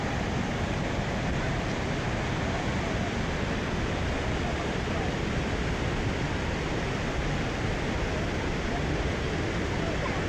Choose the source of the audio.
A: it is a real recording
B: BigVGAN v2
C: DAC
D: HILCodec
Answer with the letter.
A